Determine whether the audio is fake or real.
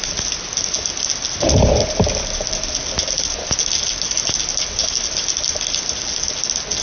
real